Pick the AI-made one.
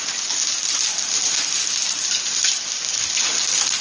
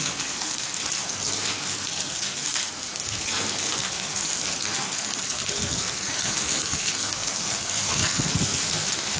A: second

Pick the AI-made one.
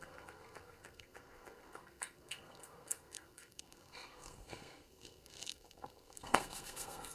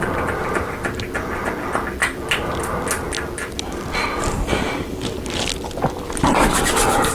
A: first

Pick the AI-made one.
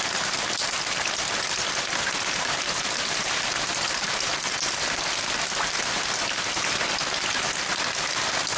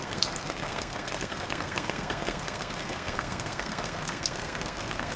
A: second